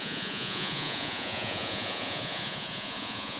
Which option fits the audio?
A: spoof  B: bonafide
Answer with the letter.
A